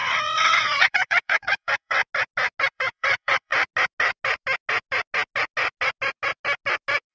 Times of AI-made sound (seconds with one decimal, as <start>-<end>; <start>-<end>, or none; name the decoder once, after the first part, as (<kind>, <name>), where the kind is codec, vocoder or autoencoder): 0.0-2.0 (vocoder, WaveNeXt); 2.7-3.5